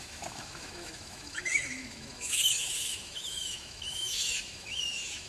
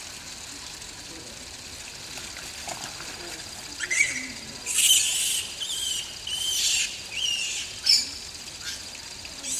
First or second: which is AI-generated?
first